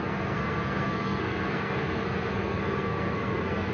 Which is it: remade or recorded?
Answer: remade